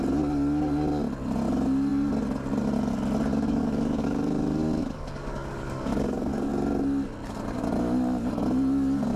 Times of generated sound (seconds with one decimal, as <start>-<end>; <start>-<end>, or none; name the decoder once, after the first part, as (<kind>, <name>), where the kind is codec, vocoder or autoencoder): 3.3-6.5 (codec, DAC)

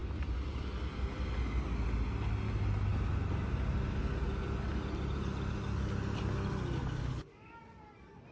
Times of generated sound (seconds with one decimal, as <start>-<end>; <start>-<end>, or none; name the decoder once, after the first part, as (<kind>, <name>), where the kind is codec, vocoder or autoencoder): 6.8-7.6 (codec, DAC)

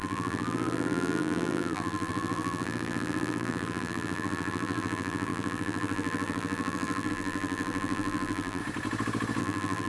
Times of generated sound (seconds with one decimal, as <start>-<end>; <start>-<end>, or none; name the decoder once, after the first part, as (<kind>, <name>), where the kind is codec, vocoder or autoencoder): 0.0-8.6 (vocoder, BigVGAN v2); 9.4-9.9

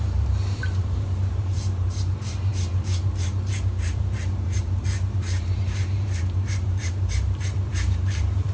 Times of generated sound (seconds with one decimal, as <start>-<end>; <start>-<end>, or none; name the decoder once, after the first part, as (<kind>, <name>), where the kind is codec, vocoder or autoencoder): 0.0-8.5 (vocoder, BigVGAN v2)

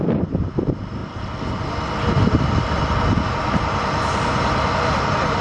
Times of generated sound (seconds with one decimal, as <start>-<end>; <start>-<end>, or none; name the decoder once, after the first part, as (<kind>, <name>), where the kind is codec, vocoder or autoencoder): none

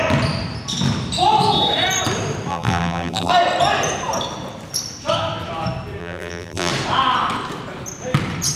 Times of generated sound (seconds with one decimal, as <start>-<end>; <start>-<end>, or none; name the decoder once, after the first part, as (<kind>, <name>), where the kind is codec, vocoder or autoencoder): 2.5-3.3 (vocoder, BigVGAN v2); 6.0-6.7

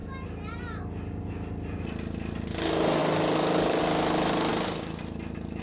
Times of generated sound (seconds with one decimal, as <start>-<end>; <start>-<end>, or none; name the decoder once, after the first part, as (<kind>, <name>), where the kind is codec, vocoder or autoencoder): 3.0-3.8 (codec, DAC)